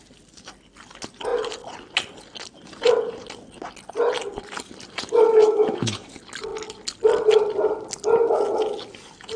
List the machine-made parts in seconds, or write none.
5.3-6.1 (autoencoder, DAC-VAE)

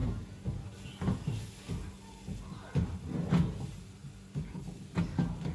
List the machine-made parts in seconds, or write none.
none

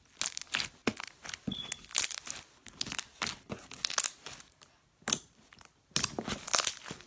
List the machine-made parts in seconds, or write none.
none

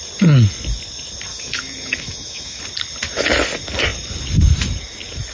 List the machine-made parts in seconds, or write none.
1.3-2.6 (autoencoder, DAC-VAE)

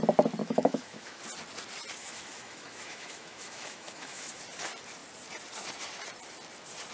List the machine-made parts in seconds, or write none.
0.4-1.2 (autoencoder, DAC-VAE); 2.0-4.4

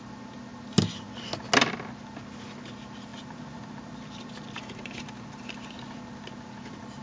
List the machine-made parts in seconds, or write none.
none

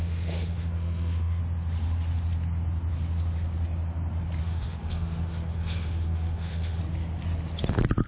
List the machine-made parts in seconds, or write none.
0.0-1.4 (autoencoder, DAC-VAE); 4.4-6.8